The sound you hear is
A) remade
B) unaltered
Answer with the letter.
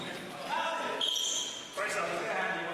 B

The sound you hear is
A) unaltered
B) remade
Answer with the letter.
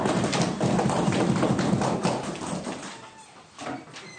A